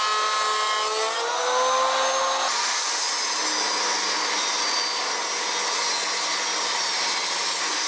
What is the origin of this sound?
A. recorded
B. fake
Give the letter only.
A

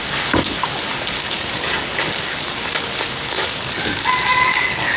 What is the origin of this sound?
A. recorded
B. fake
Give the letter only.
B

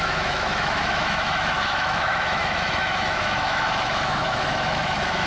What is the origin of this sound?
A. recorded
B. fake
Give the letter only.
B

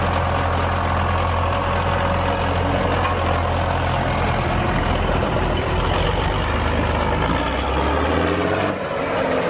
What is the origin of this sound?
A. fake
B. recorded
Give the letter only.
B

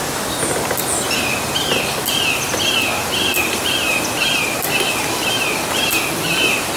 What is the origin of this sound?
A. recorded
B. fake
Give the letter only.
A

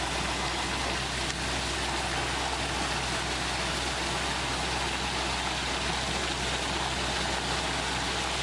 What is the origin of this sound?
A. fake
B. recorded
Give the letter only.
B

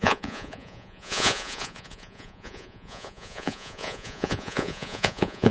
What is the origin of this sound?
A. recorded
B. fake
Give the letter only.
B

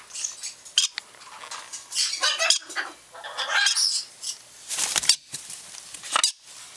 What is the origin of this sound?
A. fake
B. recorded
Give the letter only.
B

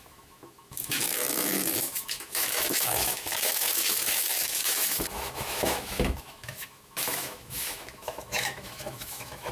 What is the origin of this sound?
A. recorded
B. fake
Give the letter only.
B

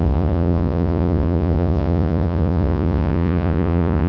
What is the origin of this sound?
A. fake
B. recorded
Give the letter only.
A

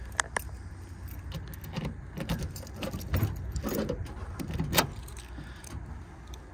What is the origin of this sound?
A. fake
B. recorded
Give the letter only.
B